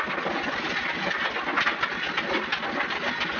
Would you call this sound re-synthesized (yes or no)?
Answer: no